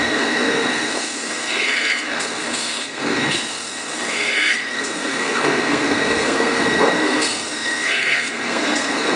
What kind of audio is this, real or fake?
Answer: fake